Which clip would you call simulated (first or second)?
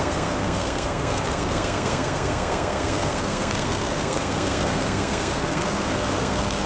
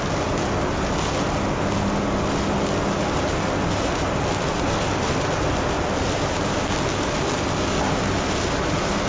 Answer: first